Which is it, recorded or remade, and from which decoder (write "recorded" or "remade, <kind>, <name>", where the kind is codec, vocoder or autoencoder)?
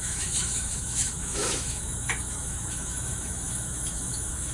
remade, autoencoder, DAC-VAE